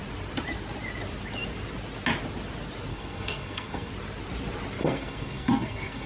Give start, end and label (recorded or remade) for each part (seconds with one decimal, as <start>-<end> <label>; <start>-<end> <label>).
0.0-2.9 recorded; 2.9-3.9 remade; 3.9-4.8 recorded; 4.8-6.1 remade

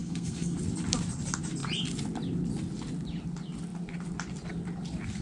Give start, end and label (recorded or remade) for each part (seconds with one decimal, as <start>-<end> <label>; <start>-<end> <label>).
0.0-0.6 remade; 0.6-5.2 recorded

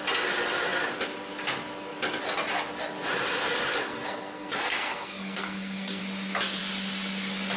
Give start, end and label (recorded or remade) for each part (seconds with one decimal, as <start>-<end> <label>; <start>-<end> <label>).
0.0-3.9 recorded; 3.9-6.0 remade; 6.0-7.6 recorded

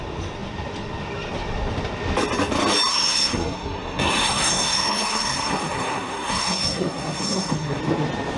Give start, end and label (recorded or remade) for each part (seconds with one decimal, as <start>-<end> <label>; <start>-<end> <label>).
0.0-2.9 recorded; 2.9-7.8 remade; 7.8-8.4 recorded

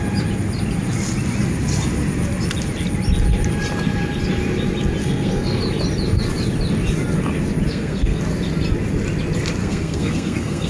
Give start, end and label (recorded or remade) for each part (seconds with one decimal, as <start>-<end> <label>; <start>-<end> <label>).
0.0-5.0 recorded; 5.0-5.6 remade; 5.6-7.7 recorded; 7.7-8.2 remade; 8.2-9.6 recorded; 9.6-10.7 remade

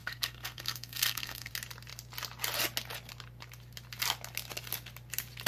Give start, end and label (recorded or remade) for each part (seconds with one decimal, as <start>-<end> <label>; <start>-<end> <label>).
0.0-1.5 remade; 1.5-5.5 recorded